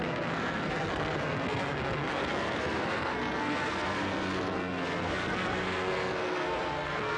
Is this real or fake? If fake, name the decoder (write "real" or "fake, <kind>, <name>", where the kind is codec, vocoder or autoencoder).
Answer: fake, codec, SNAC